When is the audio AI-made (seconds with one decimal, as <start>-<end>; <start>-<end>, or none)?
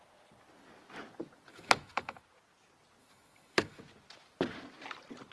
1.5-2.2; 3.0-3.8